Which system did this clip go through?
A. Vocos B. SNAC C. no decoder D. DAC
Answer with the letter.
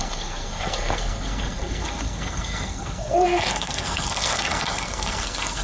B